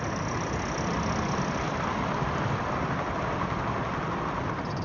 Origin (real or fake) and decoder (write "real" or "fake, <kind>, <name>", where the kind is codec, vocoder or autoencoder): real